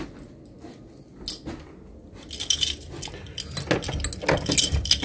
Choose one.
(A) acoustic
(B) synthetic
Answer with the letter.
A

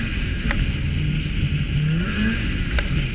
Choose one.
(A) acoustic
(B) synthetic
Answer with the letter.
A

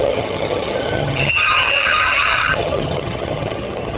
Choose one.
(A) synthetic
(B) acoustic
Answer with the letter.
A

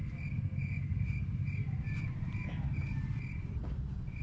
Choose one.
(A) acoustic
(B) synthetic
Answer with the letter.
A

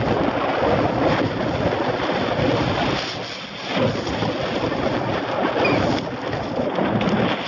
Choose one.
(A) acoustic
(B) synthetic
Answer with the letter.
A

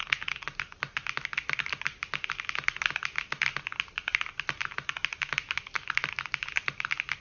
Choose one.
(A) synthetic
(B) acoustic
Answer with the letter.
B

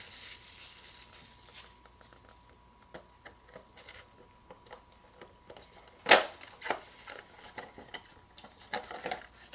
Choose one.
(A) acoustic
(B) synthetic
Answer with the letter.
A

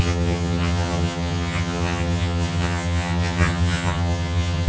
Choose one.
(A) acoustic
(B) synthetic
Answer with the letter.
B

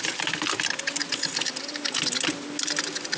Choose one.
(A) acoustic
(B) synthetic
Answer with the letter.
A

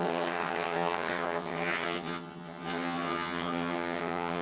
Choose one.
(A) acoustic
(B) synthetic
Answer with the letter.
B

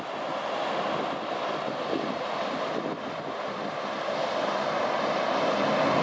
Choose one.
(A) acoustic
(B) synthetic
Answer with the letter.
A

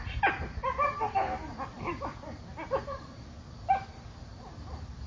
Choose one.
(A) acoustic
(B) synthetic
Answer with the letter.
A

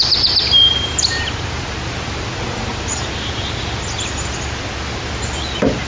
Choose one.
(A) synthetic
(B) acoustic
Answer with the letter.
B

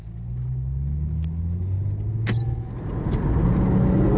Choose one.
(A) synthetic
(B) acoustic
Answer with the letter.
B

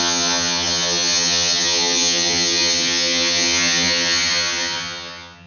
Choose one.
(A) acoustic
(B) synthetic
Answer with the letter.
B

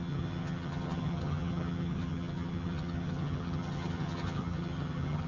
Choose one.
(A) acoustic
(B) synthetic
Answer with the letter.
B